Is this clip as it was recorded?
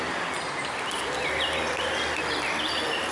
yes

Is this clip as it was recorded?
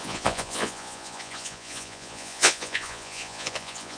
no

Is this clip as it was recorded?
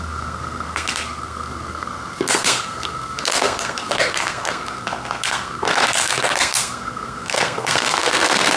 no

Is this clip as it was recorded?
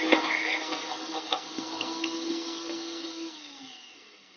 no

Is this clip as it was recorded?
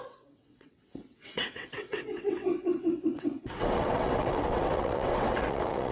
no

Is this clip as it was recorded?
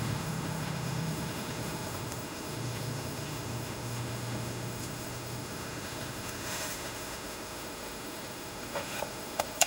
no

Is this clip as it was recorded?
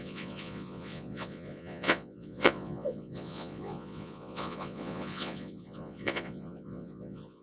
no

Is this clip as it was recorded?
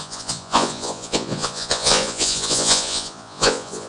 no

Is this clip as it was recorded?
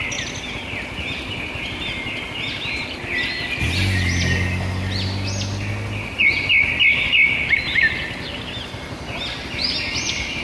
yes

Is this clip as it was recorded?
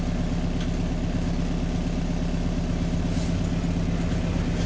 yes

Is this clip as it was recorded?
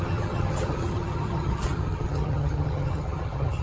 no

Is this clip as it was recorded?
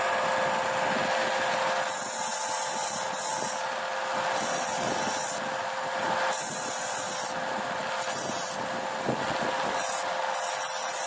yes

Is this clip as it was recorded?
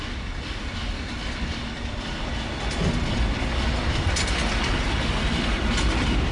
yes